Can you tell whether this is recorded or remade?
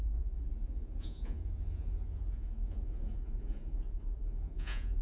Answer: remade